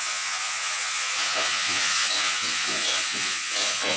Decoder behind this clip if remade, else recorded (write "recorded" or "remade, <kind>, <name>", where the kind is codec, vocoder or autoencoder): remade, vocoder, Vocos